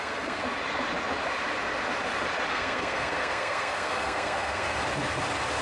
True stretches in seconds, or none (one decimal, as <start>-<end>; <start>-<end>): 0.4-2.5; 4.8-5.6